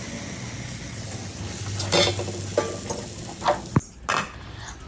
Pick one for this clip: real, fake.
real